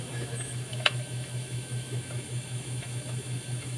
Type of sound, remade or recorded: remade